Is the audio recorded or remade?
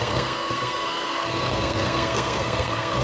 remade